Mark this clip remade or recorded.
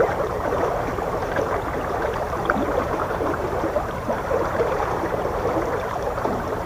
remade